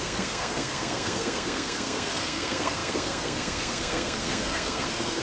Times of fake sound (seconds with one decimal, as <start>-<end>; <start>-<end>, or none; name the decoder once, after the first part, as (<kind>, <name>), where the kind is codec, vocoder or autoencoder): 0.0-5.2 (codec, SNAC)

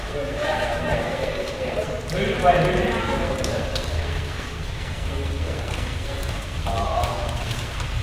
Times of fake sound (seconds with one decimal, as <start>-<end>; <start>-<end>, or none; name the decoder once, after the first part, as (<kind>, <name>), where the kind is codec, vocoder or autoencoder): 0.0-1.9 (codec, SNAC); 3.0-8.0